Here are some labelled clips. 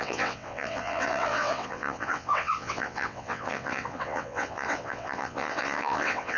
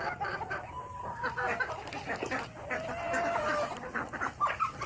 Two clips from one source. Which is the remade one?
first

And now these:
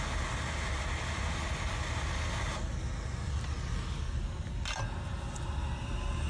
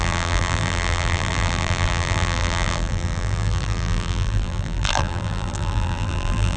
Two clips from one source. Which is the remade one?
second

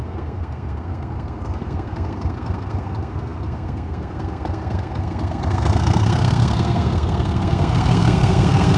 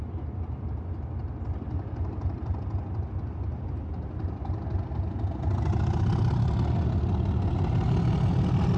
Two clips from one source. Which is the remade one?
first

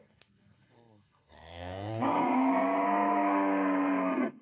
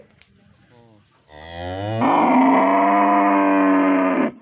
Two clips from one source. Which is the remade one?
first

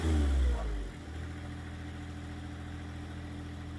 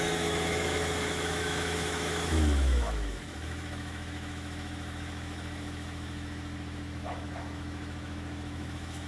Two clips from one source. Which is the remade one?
second